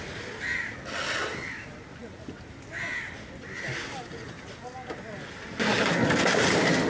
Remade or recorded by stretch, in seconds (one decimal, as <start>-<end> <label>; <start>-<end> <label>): 0.0-6.9 recorded